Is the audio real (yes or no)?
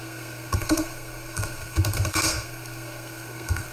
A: no